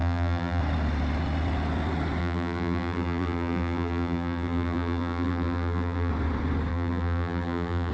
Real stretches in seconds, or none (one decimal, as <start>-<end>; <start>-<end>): 0.6-2.2; 6.1-6.7